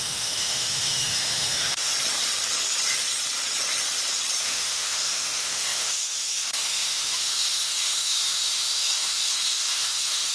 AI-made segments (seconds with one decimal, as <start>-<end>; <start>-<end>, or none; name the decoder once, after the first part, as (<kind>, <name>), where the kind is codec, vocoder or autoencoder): 0.0-1.9 (autoencoder, DAC-VAE); 4.4-10.3